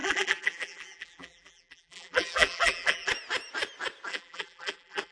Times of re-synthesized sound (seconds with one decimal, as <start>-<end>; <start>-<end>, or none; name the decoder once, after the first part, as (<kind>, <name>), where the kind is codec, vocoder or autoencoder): 0.0-3.1 (vocoder, BigVGAN v2); 4.1-5.1